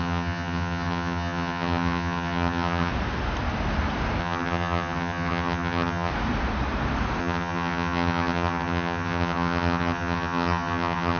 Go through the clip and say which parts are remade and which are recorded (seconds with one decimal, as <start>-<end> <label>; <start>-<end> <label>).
0.0-2.9 remade; 2.9-4.2 recorded; 4.2-6.1 remade; 6.1-7.2 recorded; 7.2-11.2 remade